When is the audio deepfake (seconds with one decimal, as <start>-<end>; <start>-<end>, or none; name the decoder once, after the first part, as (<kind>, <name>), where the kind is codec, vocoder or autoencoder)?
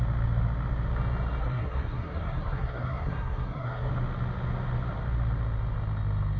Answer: 1.4-3.9 (codec, SNAC)